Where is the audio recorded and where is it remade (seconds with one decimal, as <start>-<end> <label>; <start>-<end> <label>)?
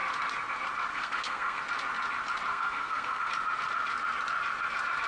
0.0-0.9 recorded; 0.9-1.6 remade; 1.6-2.5 recorded; 2.5-3.3 remade; 3.3-5.1 recorded